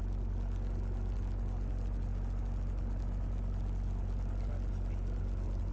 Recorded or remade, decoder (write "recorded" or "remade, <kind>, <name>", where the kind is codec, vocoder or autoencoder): recorded